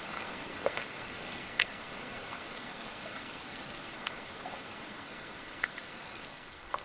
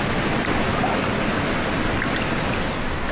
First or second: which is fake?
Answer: first